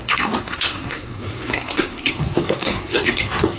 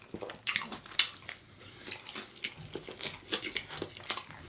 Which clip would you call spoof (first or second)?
first